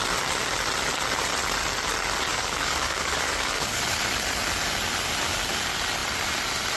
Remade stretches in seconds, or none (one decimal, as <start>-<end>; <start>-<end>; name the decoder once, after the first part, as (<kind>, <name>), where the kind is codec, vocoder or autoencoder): 2.3-3.8 (codec, DAC)